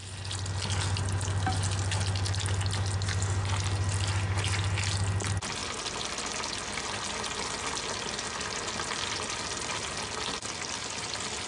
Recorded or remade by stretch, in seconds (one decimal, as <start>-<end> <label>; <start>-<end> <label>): 0.0-11.5 recorded